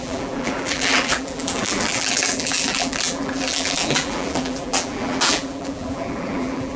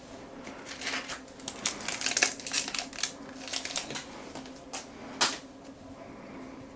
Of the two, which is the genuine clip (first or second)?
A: second